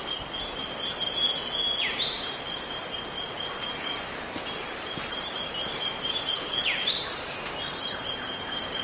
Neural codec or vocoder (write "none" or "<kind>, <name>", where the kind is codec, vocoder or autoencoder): none